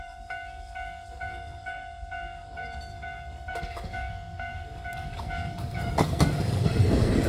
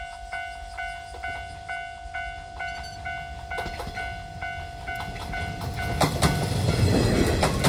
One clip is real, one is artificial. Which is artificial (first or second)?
first